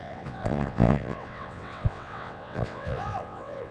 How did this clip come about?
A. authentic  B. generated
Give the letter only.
B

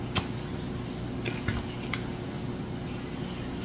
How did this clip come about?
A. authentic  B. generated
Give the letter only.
A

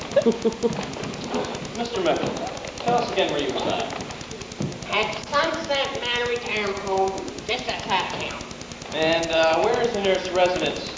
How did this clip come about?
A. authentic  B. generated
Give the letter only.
A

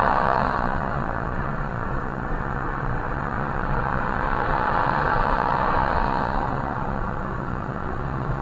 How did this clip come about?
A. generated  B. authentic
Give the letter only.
A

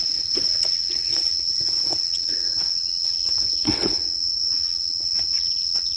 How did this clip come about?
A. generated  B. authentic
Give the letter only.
A